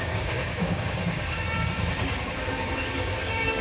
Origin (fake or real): fake